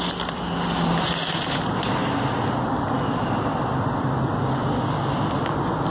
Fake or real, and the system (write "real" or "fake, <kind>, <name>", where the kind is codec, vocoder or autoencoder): real